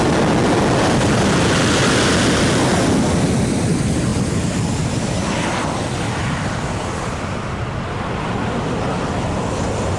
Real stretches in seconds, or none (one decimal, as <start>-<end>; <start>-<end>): 0.0-10.0